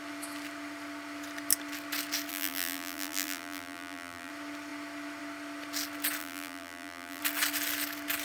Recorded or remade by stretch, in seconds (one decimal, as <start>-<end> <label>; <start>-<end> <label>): 0.0-2.3 recorded; 2.3-4.3 remade; 4.3-6.2 recorded; 6.2-7.2 remade; 7.2-8.2 recorded